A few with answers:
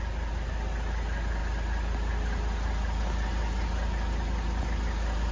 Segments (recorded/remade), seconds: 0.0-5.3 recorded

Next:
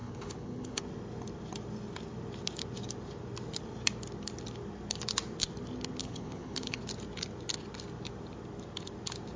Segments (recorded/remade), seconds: 0.0-0.8 remade; 0.8-6.0 recorded; 6.0-6.8 remade; 6.8-9.4 recorded